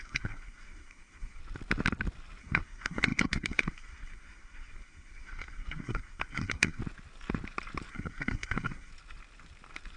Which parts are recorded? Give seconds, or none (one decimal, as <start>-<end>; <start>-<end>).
1.4-2.4; 6.8-7.9; 8.9-10.0